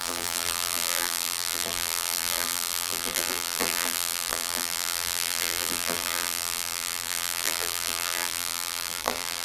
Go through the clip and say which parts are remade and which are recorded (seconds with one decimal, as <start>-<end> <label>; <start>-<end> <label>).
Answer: 0.0-9.4 remade